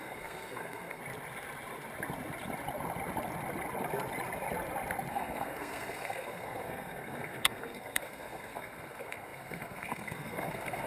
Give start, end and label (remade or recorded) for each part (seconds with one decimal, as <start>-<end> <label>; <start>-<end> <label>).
0.0-1.0 remade; 1.0-5.1 recorded; 5.1-10.9 remade